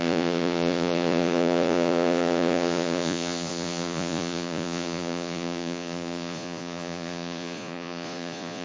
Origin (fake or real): fake